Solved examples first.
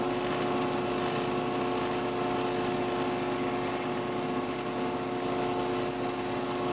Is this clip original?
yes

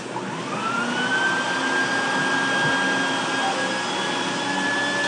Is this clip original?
yes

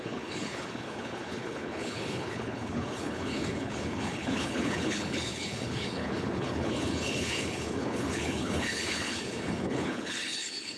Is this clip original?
no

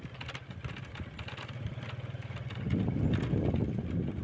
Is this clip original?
yes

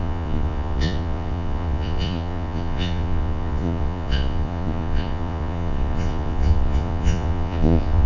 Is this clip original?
no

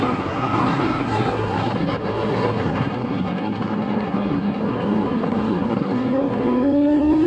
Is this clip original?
no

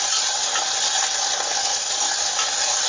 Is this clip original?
yes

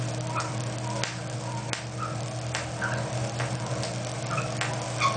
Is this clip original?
yes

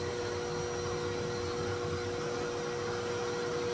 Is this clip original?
yes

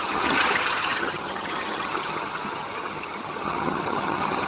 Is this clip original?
no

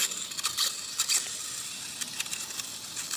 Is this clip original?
yes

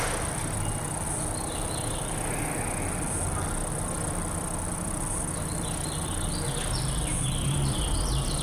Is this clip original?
yes